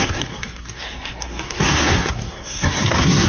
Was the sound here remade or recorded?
remade